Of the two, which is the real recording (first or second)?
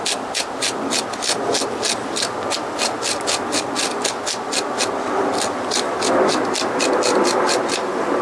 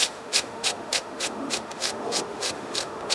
first